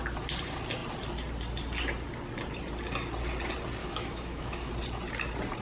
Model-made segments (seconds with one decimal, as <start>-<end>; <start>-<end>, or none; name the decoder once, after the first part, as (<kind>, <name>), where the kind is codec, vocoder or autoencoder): 3.8-4.7 (autoencoder, DAC-VAE)

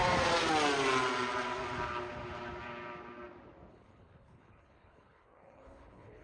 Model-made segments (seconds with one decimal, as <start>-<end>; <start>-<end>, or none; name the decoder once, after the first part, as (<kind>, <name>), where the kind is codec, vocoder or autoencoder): 3.7-6.2 (codec, HILCodec)

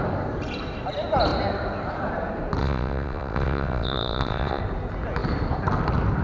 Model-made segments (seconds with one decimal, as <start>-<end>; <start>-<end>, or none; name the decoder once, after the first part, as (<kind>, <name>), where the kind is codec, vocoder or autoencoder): 2.6-4.6 (vocoder, WaveNeXt)

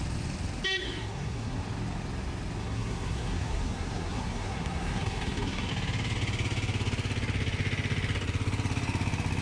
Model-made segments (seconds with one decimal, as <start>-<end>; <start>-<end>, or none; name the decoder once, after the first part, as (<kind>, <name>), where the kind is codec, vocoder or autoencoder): 0.8-1.6 (codec, SNAC); 2.6-5.7

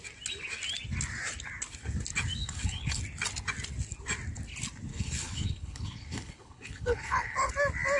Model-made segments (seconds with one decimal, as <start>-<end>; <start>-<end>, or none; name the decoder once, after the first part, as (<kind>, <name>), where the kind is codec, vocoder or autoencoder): 2.4-3.0 (codec, HILCodec); 4.9-7.5

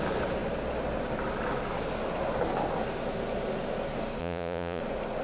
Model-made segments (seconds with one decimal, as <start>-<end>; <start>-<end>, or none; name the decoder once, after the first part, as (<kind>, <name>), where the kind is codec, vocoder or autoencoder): 4.2-4.8 (vocoder, Vocos)